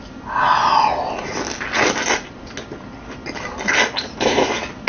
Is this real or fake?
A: real